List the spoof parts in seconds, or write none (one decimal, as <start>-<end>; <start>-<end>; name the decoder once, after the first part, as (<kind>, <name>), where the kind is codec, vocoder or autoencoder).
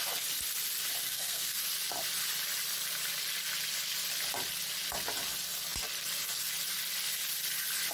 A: 1.1-1.6 (codec, SNAC)